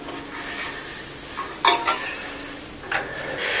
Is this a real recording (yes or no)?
yes